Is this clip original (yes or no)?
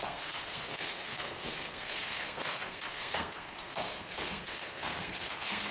no